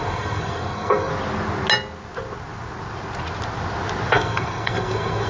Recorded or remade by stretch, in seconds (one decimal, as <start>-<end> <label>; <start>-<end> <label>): 0.0-1.1 remade; 1.1-4.1 recorded; 4.1-5.3 remade